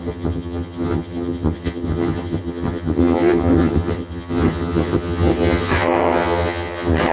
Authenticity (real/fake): fake